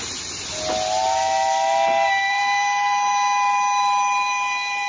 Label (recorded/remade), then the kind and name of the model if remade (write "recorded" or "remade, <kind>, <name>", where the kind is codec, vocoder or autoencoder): recorded